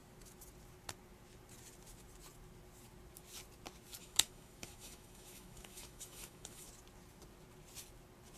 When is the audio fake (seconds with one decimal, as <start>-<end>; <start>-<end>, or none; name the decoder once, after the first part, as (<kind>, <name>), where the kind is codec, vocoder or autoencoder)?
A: 4.0-6.7 (autoencoder, DAC-VAE)